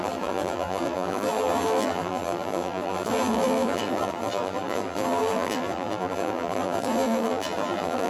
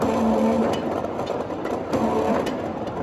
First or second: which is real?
second